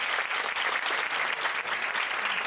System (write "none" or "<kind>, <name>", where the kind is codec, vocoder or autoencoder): none